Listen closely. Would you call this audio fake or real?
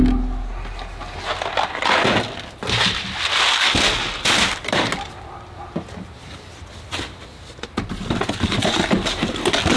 real